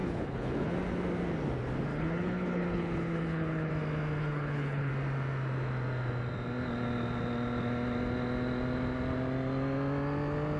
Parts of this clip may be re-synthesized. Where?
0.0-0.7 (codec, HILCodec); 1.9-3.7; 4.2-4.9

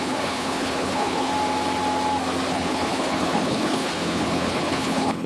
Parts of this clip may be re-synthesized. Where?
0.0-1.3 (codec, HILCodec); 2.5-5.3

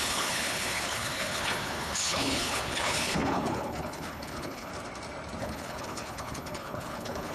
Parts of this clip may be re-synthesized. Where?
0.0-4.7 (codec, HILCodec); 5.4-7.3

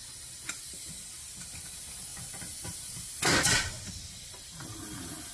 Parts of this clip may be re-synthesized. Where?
none

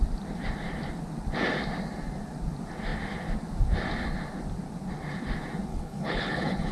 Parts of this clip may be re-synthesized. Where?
5.7-6.7 (codec, HILCodec)

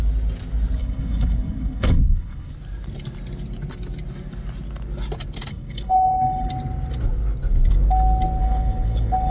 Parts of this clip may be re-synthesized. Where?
0.8-2.5 (codec, HILCodec); 5.5-6.5; 8.4-9.3